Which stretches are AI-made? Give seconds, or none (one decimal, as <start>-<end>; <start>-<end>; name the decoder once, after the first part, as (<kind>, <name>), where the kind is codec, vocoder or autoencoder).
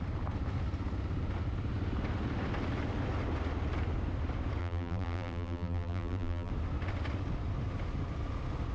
4.6-6.5 (vocoder, BigVGAN v2)